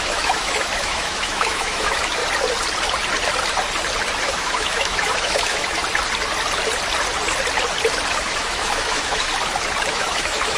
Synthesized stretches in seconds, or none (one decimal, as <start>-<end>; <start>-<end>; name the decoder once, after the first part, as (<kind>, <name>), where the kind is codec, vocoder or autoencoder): 0.0-2.2 (autoencoder, DAC-VAE); 4.2-5.8; 8.1-9.3; 9.9-10.6